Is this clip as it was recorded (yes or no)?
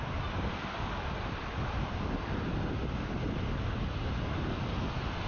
yes